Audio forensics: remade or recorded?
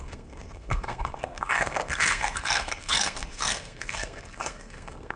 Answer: remade